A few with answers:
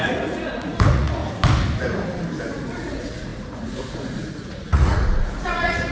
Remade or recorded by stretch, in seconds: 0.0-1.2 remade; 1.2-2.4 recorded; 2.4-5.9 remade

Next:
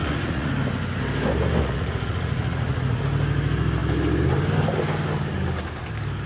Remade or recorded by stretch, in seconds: 0.0-0.5 remade; 0.5-1.6 recorded; 1.6-3.0 remade; 3.0-6.3 recorded

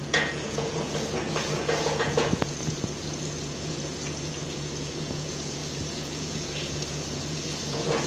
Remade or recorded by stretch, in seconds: 0.0-8.1 remade

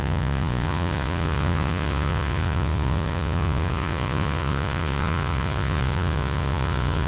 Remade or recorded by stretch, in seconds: 0.0-7.1 remade